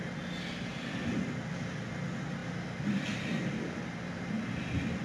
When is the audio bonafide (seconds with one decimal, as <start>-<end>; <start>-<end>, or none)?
0.0-5.0